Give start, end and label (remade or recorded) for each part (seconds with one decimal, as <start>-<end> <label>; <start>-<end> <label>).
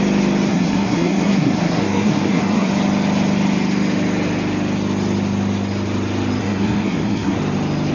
0.0-0.5 recorded; 0.5-2.7 remade; 2.7-6.4 recorded; 6.4-7.4 remade; 7.4-7.9 recorded